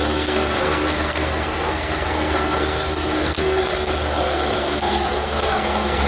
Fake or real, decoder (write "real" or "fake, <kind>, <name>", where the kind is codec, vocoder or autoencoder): fake, codec, SNAC